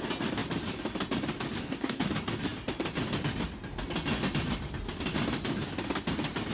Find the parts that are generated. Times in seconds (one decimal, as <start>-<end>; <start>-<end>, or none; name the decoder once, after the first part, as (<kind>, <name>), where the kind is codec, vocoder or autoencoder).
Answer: 1.6-2.1 (codec, SNAC)